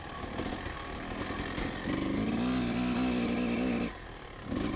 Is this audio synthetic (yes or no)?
no